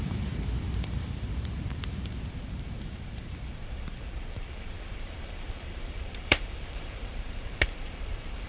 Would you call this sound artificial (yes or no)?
yes